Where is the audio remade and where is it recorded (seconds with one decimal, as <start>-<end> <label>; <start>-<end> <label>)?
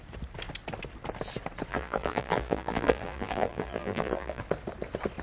0.0-1.7 recorded; 1.7-4.4 remade; 4.4-5.2 recorded